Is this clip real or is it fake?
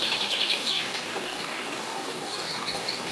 fake